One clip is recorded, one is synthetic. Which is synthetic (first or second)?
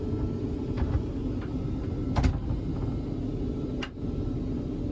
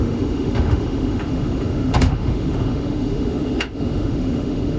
second